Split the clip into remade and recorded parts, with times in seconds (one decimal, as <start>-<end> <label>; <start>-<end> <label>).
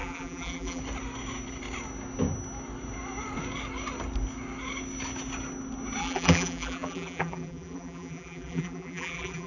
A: 0.0-0.8 remade; 0.8-6.0 recorded; 6.0-9.5 remade